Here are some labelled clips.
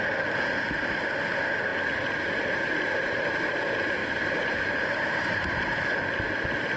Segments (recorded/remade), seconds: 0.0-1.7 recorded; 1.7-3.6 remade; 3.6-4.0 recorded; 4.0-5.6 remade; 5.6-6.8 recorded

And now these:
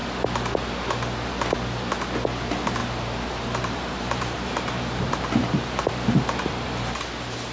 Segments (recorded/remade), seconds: 0.0-2.8 recorded; 2.8-7.0 remade; 7.0-7.5 recorded